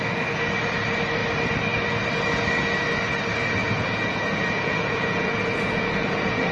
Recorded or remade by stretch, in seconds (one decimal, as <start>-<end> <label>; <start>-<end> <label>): 0.0-3.6 recorded; 3.6-6.5 remade